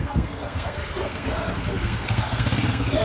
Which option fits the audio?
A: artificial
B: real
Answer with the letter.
A